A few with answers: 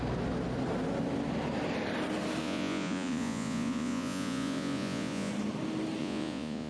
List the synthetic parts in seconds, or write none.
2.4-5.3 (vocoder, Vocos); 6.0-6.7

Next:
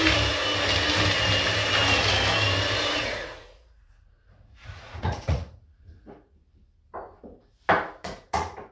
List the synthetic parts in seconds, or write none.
3.0-6.3 (vocoder, Vocos); 8.0-8.7